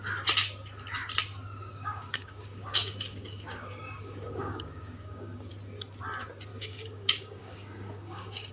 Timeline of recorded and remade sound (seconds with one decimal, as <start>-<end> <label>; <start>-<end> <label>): 0.0-1.7 recorded; 1.7-5.5 remade; 5.5-6.5 recorded; 6.5-8.5 remade